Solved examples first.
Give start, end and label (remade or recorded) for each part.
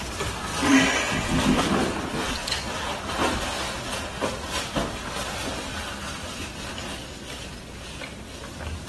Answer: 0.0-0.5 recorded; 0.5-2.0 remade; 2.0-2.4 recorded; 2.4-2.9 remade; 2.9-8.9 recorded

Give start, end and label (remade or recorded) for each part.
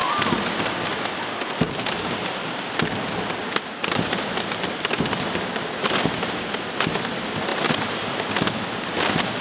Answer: 0.0-0.9 remade; 0.9-2.3 recorded; 2.3-5.9 remade; 5.9-7.5 recorded; 7.5-8.3 remade; 8.3-9.4 recorded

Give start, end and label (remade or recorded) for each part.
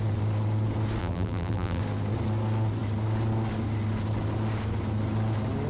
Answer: 0.0-1.0 recorded; 1.0-1.8 remade; 1.8-5.7 recorded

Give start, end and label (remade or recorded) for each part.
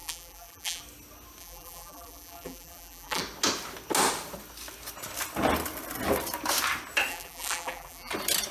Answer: 0.0-0.8 remade; 0.8-1.4 recorded; 1.4-3.2 remade; 3.2-7.1 recorded; 7.1-8.1 remade; 8.1-8.5 recorded